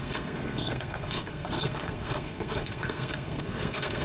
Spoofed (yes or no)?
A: yes